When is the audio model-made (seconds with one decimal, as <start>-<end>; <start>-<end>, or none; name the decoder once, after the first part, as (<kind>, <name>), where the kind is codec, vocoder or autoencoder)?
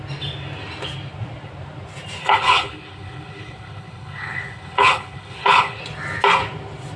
2.2-5.8 (codec, HILCodec)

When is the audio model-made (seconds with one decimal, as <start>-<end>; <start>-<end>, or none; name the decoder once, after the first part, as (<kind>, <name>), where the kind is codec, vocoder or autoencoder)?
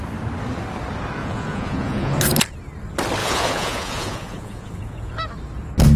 1.2-2.1 (vocoder, Vocos); 3.2-5.1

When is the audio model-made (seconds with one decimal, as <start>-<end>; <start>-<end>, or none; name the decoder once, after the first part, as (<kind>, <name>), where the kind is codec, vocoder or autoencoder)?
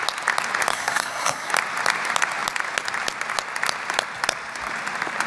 0.7-1.5 (codec, SNAC)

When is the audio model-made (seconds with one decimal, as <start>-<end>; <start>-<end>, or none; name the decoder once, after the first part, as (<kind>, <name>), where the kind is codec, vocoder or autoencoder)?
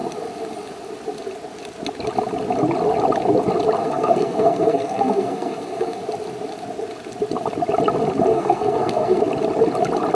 3.8-6.0 (codec, SNAC); 8.3-9.2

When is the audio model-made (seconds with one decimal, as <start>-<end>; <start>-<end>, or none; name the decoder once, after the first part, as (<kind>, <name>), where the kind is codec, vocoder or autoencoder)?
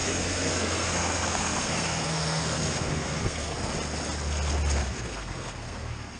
0.0-3.7 (codec, SNAC); 4.8-6.2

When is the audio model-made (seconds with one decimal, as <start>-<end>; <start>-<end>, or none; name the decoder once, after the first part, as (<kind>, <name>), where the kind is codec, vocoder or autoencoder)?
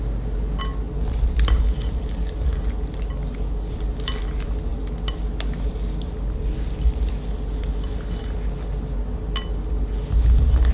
none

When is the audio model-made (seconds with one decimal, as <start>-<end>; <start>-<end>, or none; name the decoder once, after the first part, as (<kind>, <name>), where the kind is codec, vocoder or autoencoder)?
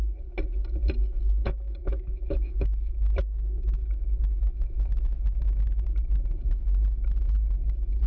1.4-6.2 (autoencoder, DAC-VAE)